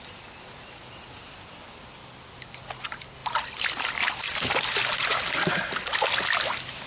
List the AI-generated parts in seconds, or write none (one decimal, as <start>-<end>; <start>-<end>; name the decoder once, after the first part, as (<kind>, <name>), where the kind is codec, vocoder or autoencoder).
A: none